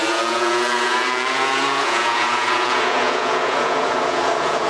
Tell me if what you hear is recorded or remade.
remade